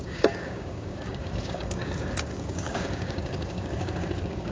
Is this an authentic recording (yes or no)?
no